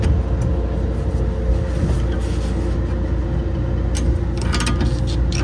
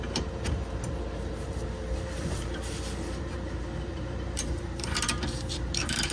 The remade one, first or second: second